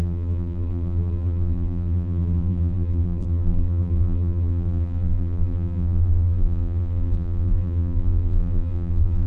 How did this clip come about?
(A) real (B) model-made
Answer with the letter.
B